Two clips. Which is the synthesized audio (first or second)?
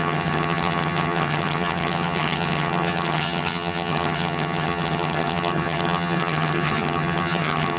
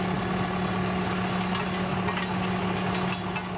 first